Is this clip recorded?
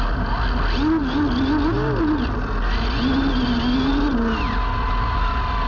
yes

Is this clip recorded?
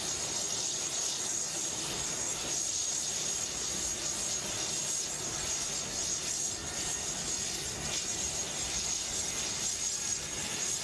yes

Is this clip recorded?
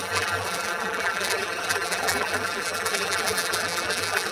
no